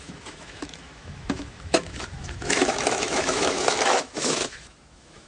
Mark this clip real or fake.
fake